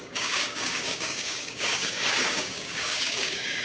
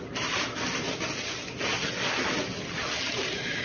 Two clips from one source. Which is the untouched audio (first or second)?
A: second